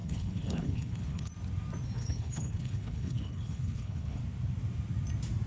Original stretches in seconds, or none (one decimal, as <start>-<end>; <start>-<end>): 1.3-2.0; 4.2-5.5